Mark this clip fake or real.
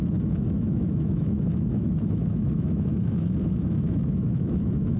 fake